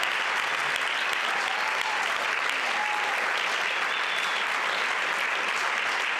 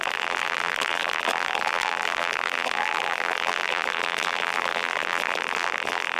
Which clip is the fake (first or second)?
second